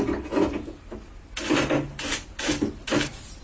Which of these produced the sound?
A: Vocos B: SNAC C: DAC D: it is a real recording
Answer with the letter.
D